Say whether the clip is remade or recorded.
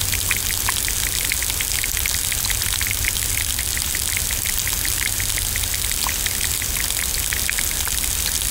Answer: recorded